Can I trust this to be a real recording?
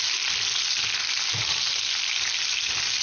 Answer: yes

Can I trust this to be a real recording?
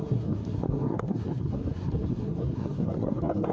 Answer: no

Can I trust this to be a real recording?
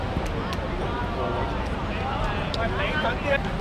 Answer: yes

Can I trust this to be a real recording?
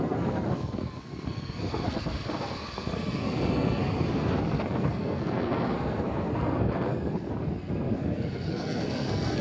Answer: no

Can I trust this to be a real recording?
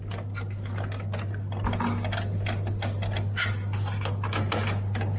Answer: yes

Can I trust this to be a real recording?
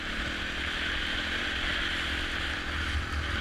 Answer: yes